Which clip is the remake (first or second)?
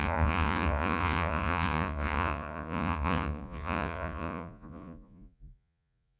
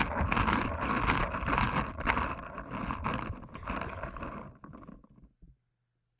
first